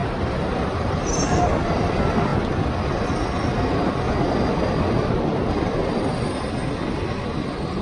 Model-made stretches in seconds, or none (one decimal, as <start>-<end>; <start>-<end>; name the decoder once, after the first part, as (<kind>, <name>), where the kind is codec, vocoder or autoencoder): 0.0-1.9 (vocoder, BigVGAN v2)